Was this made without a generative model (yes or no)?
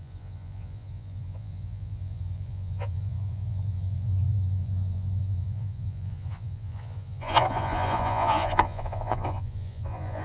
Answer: no